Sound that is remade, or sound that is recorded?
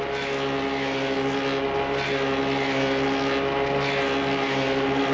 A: recorded